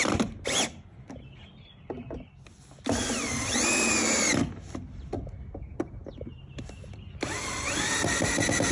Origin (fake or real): real